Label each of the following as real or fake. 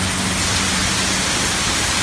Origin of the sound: real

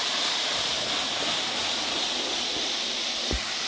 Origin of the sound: real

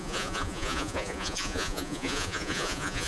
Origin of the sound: fake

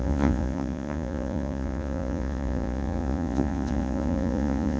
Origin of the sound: fake